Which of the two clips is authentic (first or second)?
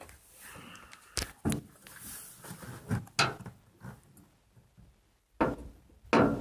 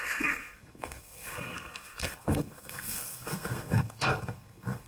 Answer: first